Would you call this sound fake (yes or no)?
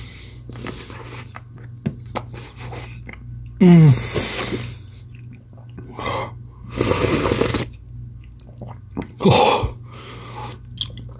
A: no